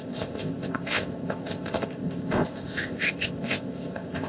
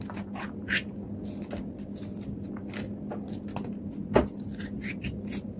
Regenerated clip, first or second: first